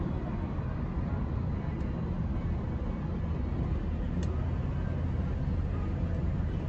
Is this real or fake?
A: real